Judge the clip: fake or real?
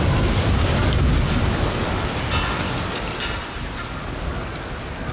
real